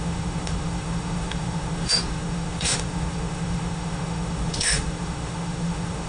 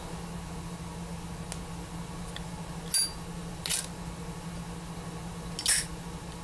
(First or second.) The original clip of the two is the second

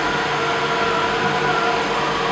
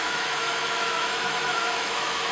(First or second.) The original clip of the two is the first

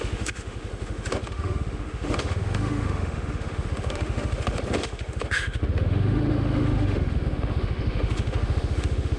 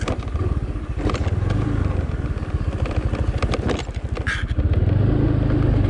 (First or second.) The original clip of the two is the second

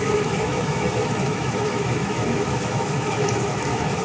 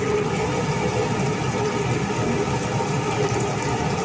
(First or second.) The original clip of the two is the second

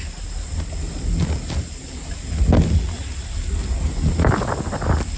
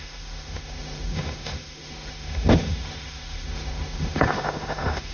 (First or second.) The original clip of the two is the first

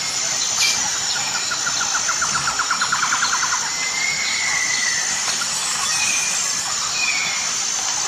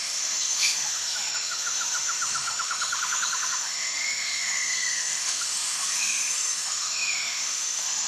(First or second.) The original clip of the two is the first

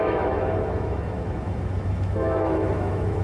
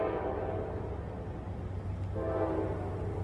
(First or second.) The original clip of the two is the second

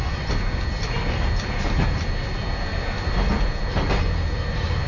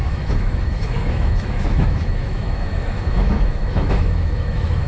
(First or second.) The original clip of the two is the first